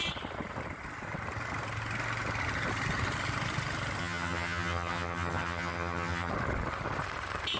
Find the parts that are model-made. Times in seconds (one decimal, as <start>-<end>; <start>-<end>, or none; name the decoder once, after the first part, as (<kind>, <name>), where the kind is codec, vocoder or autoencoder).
4.0-6.3 (vocoder, HiFi-GAN)